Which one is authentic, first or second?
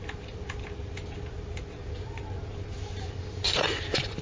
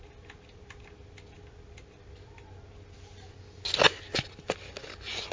second